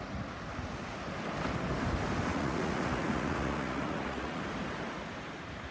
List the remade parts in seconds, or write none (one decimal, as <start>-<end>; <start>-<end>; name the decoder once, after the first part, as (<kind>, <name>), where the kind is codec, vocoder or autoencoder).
2.3-4.4 (vocoder, Vocos)